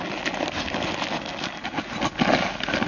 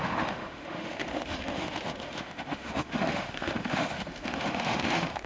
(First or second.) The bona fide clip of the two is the first